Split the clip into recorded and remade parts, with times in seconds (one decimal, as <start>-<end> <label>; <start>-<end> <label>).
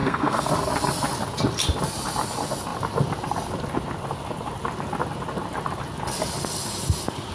0.0-0.5 remade; 0.5-7.3 recorded